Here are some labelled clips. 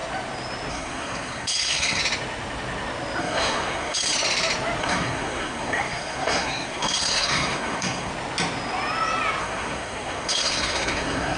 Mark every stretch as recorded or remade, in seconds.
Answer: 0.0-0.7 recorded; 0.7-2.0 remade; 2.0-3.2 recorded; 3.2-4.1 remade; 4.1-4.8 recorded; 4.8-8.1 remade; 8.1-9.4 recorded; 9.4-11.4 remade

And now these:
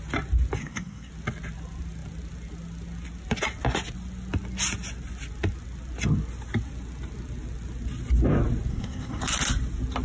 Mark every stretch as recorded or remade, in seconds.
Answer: 0.0-0.6 recorded; 0.6-1.1 remade; 1.1-8.7 recorded; 8.7-9.2 remade; 9.2-10.0 recorded

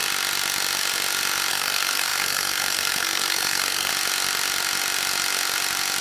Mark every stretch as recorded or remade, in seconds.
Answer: 0.0-1.5 recorded; 1.5-3.9 remade; 3.9-6.0 recorded